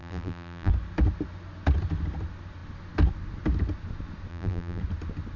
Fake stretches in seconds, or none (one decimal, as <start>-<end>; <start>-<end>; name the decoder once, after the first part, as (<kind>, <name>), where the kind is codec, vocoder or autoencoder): 0.0-0.7 (vocoder, BigVGAN v2); 4.3-4.8